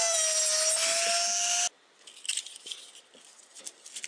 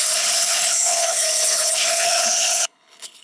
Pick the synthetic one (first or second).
second